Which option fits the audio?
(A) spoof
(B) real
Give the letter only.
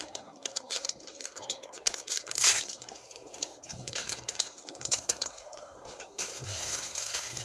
A